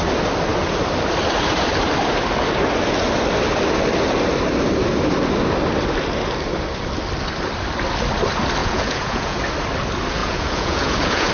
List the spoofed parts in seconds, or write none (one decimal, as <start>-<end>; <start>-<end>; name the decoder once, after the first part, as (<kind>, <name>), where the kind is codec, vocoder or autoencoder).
8.6-9.4 (vocoder, Vocos); 10.2-11.3